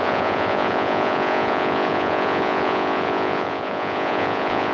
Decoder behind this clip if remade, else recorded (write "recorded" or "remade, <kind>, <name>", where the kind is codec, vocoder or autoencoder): remade, vocoder, Vocos